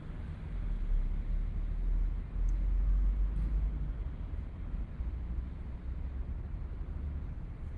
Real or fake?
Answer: real